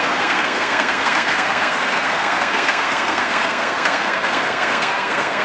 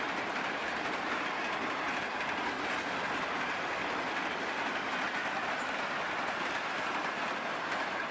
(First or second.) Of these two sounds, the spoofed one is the first